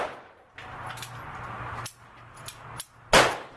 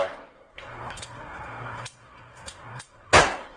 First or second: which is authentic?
first